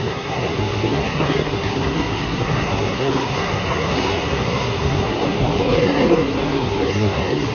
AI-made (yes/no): yes